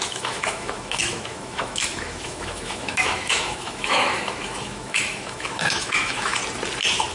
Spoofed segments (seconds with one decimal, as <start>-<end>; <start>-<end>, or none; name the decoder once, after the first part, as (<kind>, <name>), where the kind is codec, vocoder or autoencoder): 0.0-6.4 (autoencoder, DAC-VAE)